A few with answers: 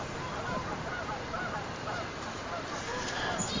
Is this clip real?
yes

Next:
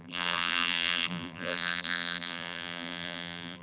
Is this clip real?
no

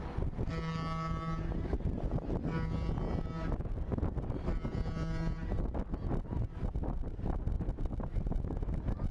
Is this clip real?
yes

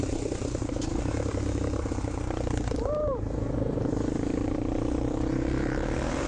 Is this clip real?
no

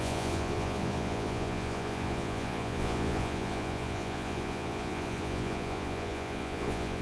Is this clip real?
no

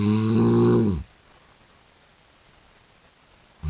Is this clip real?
yes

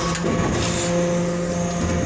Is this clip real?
yes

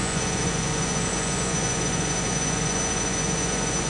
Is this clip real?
no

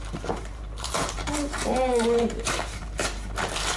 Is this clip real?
no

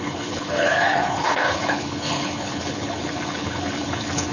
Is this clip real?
no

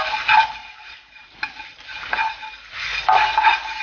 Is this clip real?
yes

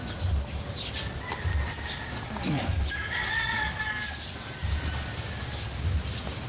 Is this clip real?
yes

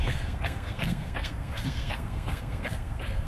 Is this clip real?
no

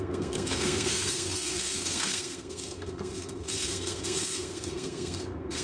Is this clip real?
no